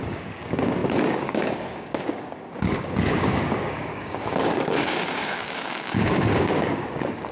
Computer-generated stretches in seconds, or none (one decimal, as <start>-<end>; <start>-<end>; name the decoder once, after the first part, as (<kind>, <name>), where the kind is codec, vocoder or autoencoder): 0.0-7.3 (codec, DAC)